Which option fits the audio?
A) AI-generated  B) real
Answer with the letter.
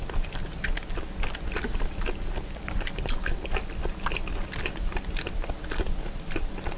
B